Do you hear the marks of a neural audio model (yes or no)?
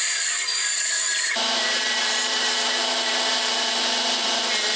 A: yes